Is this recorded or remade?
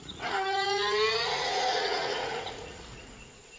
remade